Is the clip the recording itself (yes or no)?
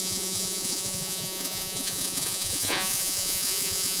no